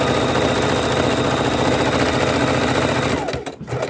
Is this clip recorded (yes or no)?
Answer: yes